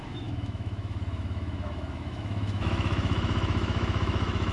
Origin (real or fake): fake